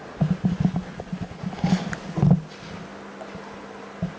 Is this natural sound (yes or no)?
yes